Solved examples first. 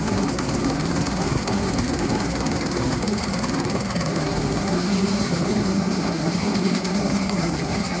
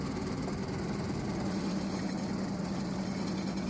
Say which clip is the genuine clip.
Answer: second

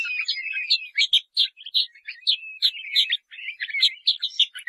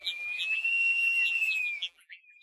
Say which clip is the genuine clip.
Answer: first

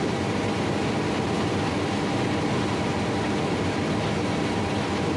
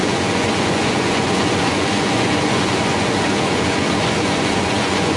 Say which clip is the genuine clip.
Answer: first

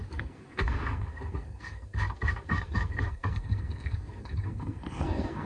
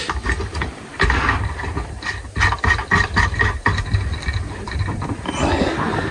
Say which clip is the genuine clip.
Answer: second